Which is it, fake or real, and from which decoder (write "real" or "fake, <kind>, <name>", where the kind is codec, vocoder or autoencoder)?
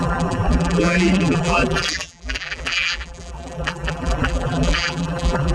fake, vocoder, BigVGAN v2